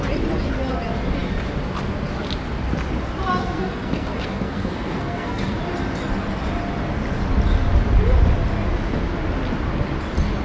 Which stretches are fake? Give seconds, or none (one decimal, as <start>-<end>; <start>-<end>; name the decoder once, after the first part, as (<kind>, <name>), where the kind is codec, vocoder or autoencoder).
3.4-5.6 (codec, SNAC)